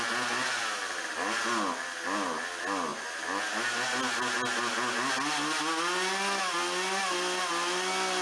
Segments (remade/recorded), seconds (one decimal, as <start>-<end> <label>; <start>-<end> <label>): 0.0-8.2 recorded